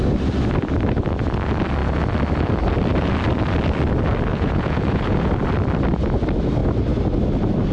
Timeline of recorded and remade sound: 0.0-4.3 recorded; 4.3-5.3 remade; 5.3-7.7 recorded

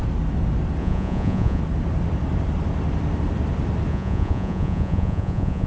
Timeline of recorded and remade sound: 0.0-0.8 recorded; 0.8-1.6 remade; 1.6-3.9 recorded; 3.9-5.7 remade

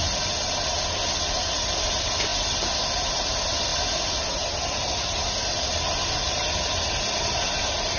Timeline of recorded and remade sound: 0.0-8.0 recorded

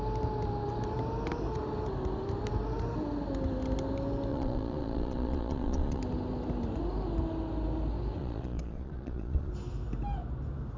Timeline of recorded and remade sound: 0.0-4.3 recorded; 4.3-6.0 remade; 6.0-8.2 recorded; 8.2-9.5 remade; 9.5-10.8 recorded

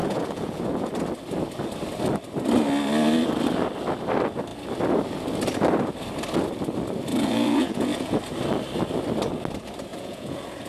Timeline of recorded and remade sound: 0.0-0.9 remade; 0.9-7.1 recorded; 7.1-8.2 remade; 8.2-9.9 recorded; 9.9-10.7 remade

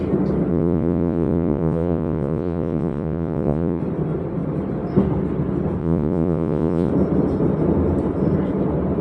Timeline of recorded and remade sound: 0.0-0.5 recorded; 0.5-3.8 remade; 3.8-5.8 recorded; 5.8-6.9 remade; 6.9-9.0 recorded